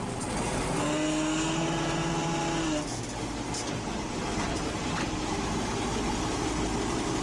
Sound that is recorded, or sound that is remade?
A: recorded